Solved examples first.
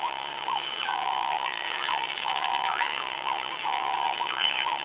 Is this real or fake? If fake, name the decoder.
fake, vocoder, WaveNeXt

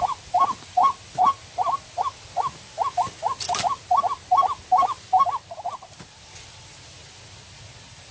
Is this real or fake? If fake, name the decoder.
real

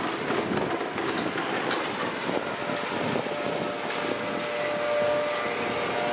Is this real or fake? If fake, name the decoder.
real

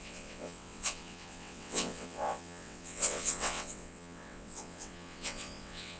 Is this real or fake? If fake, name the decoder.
fake, vocoder, WaveNeXt